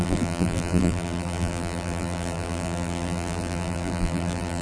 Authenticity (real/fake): fake